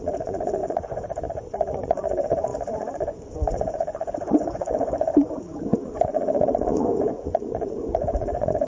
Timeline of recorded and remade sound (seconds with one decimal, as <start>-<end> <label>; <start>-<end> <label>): 0.0-8.7 remade